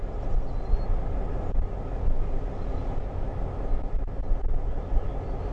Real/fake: real